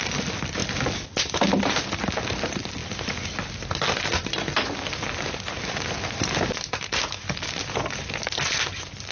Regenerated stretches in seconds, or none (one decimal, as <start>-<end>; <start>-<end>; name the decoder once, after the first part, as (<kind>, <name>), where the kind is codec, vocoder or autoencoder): none